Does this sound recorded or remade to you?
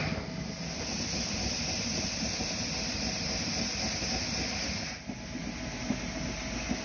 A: recorded